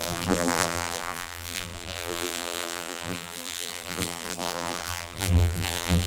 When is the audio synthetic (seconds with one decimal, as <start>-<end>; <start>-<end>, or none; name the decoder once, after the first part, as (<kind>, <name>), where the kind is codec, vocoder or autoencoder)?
0.0-6.1 (vocoder, BigVGAN v2)